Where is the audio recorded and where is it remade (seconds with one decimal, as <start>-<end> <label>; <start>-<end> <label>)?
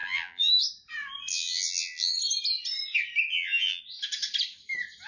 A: 0.0-0.6 remade; 0.6-1.3 recorded; 1.3-2.1 remade; 2.1-3.3 recorded; 3.3-3.8 remade; 3.8-5.1 recorded